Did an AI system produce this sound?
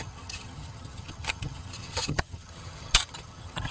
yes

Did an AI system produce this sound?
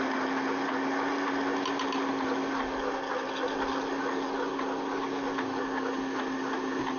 no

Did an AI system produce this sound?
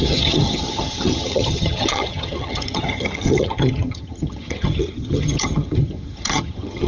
yes